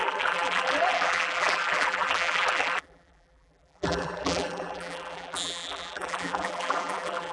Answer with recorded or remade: remade